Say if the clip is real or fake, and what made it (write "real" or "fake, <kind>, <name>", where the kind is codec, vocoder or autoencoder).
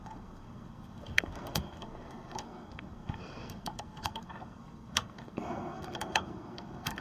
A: fake, codec, SNAC